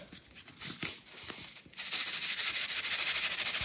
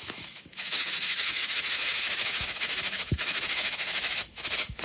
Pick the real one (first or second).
first